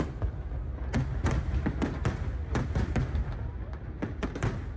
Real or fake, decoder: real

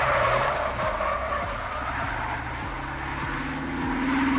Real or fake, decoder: real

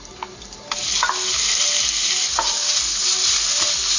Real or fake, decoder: real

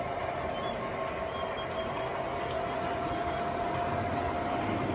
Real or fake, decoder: real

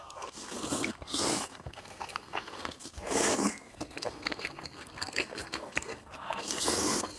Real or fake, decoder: fake, codec, SNAC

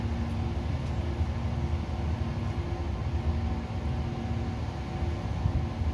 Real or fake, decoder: real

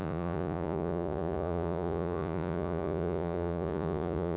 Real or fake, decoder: fake, vocoder, Vocos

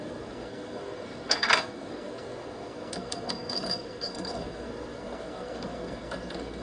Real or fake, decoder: fake, codec, SNAC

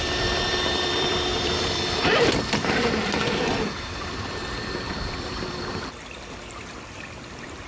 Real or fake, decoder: fake, vocoder, BigVGAN v2